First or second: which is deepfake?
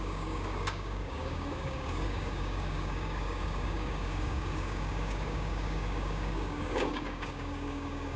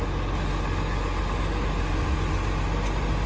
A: first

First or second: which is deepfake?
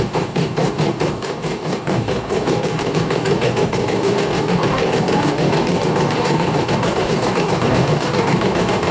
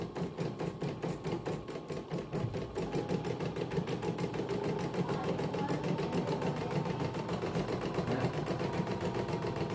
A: first